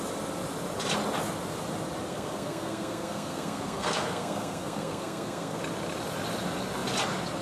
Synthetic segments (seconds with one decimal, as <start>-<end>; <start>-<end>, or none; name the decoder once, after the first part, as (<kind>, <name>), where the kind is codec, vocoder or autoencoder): 2.1-5.6 (codec, SNAC)